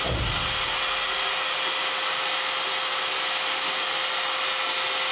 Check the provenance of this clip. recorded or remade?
recorded